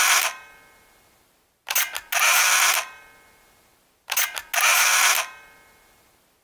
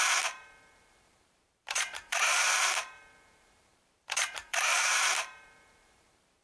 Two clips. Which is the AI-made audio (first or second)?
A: second